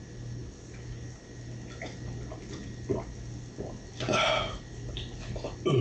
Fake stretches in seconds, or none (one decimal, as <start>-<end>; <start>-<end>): none